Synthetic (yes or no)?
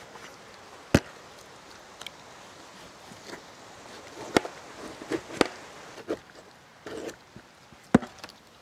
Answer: no